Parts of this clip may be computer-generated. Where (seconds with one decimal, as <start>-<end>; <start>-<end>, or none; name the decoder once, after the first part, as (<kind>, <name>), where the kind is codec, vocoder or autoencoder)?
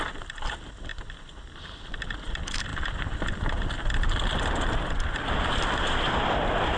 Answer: none